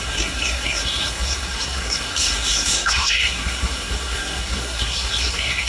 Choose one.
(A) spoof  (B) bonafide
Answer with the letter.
A